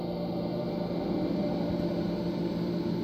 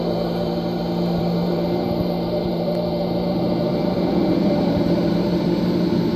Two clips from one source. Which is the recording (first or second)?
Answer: first